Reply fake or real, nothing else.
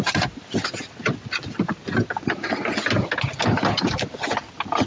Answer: real